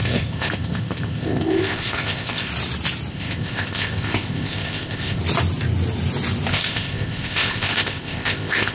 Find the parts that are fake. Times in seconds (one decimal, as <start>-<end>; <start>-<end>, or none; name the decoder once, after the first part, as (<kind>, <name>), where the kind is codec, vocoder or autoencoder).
0.0-2.5 (codec, ZipCodec); 3.1-5.2; 6.5-8.7